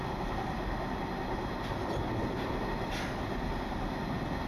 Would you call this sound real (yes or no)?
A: yes